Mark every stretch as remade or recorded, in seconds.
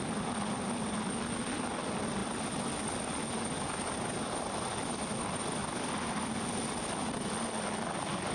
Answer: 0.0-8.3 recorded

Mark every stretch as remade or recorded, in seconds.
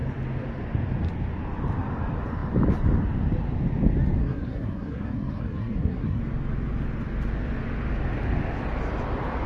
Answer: 0.0-4.2 recorded; 4.2-6.2 remade; 6.2-9.5 recorded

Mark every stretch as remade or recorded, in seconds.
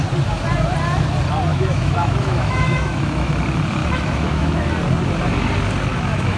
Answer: 0.0-1.5 recorded; 1.5-3.4 remade; 3.4-3.8 recorded; 3.8-4.7 remade; 4.7-5.9 recorded; 5.9-6.4 remade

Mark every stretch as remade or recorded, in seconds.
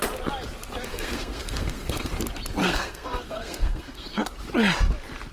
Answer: 0.0-0.9 recorded; 0.9-2.1 remade; 2.1-2.6 recorded; 2.6-4.3 remade; 4.3-5.3 recorded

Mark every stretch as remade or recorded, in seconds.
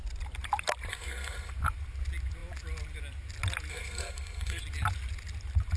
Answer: 0.0-0.9 recorded; 0.9-1.5 remade; 1.5-3.7 recorded; 3.7-4.6 remade; 4.6-5.8 recorded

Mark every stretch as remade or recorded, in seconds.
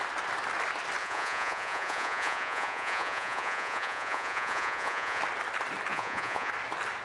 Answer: 0.0-1.0 recorded; 1.0-5.2 remade; 5.2-5.9 recorded; 5.9-6.5 remade; 6.5-7.0 recorded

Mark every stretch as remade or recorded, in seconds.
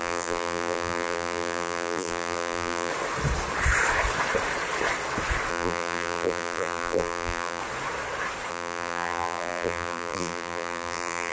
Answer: 0.0-2.9 remade; 2.9-5.5 recorded; 5.5-7.6 remade; 7.6-8.5 recorded; 8.5-11.3 remade